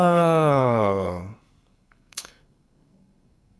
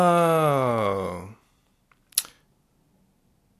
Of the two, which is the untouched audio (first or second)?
second